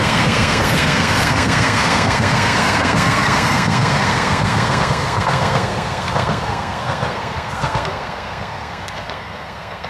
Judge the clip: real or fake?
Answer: fake